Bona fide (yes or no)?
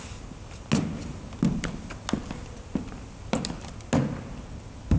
yes